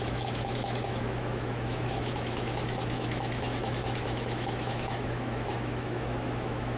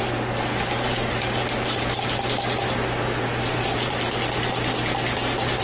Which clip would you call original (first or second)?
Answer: second